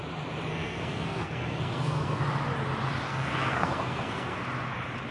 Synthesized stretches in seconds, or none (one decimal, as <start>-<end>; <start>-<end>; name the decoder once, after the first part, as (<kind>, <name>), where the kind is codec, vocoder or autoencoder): 0.5-2.2 (codec, SNAC); 3.1-4.4